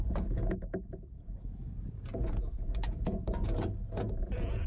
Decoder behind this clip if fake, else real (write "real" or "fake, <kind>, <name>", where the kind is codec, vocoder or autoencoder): fake, vocoder, Vocos